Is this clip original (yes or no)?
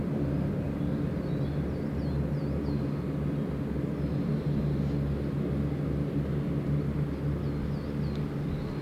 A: yes